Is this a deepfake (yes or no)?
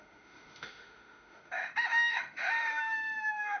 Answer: yes